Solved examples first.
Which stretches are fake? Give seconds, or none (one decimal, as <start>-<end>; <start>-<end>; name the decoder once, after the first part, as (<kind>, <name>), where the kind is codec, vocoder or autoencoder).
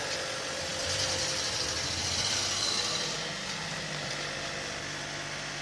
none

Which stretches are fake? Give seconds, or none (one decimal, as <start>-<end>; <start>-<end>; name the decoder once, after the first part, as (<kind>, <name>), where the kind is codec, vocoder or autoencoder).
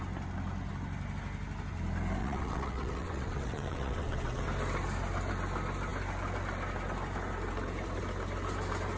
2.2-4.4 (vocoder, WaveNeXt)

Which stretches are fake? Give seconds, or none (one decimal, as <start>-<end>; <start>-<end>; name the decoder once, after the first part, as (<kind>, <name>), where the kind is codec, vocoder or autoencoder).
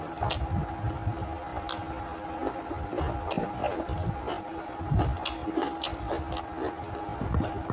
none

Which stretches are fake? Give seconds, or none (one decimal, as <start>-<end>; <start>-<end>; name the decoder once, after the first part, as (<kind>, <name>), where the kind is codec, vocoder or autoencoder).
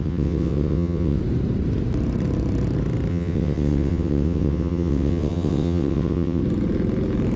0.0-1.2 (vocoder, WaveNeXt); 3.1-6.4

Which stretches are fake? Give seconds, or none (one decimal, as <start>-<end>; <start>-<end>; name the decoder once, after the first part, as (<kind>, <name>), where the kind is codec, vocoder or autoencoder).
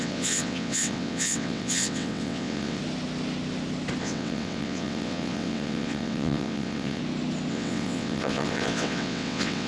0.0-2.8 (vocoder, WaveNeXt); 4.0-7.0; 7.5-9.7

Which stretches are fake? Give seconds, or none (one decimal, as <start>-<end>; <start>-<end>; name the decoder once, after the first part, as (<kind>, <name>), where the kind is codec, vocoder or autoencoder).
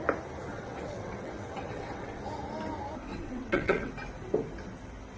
0.5-2.2 (vocoder, WaveNeXt); 3.1-3.9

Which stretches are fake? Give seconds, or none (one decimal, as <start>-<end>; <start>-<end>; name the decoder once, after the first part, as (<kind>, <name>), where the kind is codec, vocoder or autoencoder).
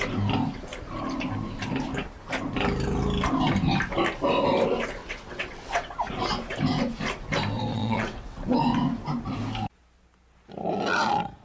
5.0-5.9 (vocoder, WaveNeXt); 7.7-8.6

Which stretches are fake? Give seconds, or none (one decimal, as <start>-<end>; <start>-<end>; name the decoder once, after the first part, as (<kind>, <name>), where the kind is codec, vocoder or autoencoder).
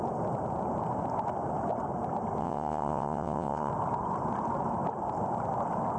2.4-3.7 (vocoder, WaveNeXt)